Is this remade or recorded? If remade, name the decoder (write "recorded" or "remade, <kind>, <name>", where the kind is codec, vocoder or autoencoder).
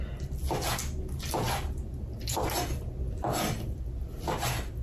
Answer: recorded